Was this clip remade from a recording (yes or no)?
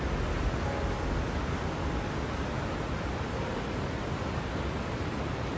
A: no